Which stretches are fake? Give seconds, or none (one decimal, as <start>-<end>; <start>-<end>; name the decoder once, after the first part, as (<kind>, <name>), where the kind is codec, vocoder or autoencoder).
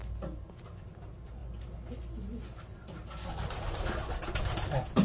none